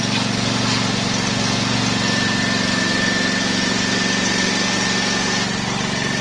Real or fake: real